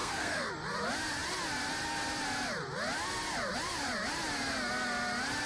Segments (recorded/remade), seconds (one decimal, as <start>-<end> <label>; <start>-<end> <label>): 0.0-0.5 remade; 0.5-5.5 recorded